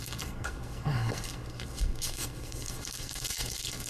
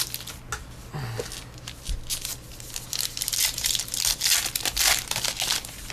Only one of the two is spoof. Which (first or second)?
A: first